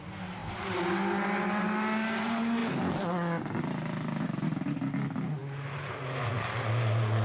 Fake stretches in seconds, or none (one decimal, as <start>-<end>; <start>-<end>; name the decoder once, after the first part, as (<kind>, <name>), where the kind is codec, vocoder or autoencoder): none